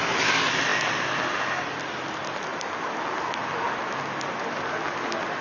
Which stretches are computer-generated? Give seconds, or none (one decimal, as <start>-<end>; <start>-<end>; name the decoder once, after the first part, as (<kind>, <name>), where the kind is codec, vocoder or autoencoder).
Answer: none